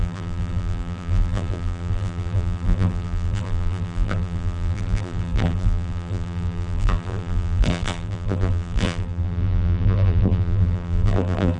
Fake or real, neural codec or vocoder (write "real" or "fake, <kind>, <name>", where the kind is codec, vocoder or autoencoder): fake, vocoder, BigVGAN v2